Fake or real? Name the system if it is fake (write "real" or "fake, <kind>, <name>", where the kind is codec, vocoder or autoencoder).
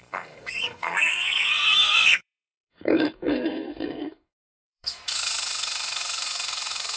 fake, codec, SNAC